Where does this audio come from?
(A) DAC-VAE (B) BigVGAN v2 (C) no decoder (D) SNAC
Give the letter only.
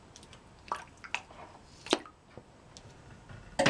C